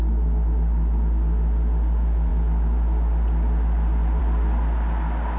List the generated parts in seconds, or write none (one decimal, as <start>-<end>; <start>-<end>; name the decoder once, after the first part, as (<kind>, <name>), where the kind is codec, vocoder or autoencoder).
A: none